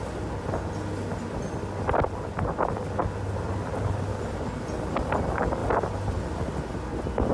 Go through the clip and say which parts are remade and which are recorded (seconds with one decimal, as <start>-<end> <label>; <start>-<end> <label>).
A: 0.0-7.3 recorded